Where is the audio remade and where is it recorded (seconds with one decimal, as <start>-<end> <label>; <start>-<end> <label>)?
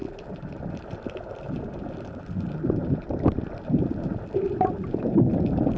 0.0-5.8 recorded